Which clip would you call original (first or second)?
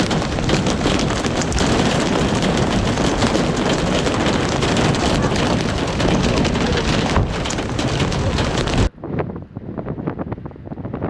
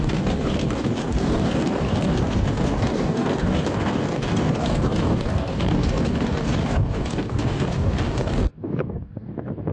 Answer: first